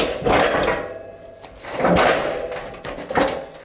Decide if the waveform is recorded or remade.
recorded